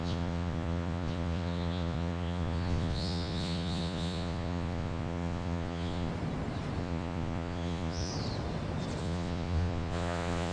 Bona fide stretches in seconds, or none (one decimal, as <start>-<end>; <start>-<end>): 6.1-6.8; 8.1-9.0